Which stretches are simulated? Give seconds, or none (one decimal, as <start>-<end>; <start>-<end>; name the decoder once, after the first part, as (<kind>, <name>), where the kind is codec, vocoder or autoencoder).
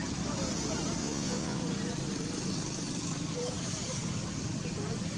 1.0-1.6 (vocoder, Vocos)